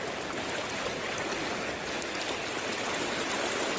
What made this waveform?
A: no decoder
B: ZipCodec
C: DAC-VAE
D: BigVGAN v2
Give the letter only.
A